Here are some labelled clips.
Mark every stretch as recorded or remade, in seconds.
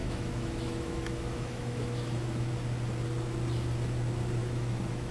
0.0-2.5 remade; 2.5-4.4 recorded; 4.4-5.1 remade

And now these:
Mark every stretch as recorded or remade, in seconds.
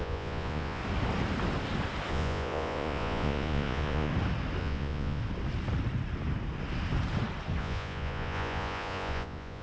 0.0-0.8 remade; 0.8-2.1 recorded; 2.1-4.1 remade; 4.1-4.6 recorded; 4.6-5.2 remade; 5.2-7.6 recorded; 7.6-9.6 remade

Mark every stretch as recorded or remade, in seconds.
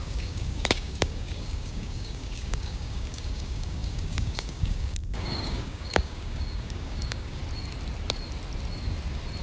0.0-7.4 remade; 7.4-9.4 recorded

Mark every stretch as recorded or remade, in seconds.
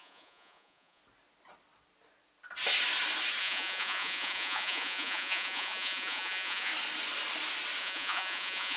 0.0-1.0 remade; 1.0-3.4 recorded; 3.4-6.7 remade; 6.7-7.8 recorded; 7.8-8.8 remade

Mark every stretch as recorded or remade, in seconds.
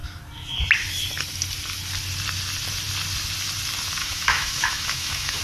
0.0-4.0 recorded; 4.0-5.4 remade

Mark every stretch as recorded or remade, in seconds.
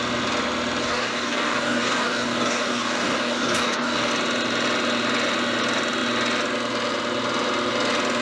0.0-0.8 recorded; 0.8-4.1 remade; 4.1-8.2 recorded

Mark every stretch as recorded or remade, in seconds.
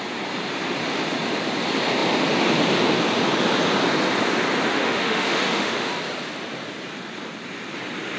0.0-4.7 recorded; 4.7-5.9 remade; 5.9-8.2 recorded